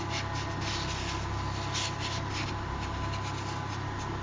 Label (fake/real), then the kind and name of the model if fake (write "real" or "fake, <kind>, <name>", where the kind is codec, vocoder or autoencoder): real